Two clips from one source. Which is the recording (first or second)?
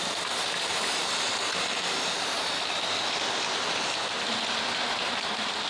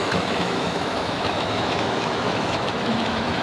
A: first